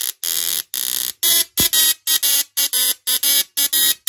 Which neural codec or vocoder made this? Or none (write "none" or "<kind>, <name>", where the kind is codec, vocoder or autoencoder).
none